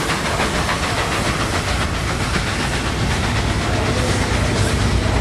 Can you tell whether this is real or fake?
real